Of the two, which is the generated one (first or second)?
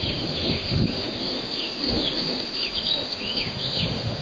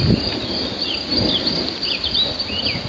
first